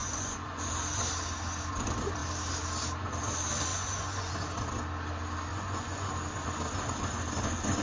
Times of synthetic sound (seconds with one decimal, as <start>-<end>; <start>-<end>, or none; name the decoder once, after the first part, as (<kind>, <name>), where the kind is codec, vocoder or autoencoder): 0.0-0.7 (vocoder, Vocos); 3.7-4.3; 5.5-6.1